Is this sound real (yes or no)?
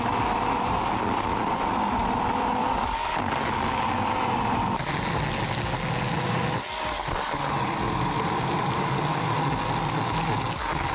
yes